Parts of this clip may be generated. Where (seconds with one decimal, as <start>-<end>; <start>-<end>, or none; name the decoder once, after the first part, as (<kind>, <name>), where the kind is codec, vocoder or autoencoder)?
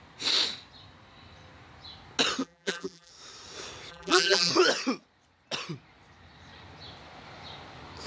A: 2.4-3.1 (vocoder, BigVGAN v2); 3.9-4.5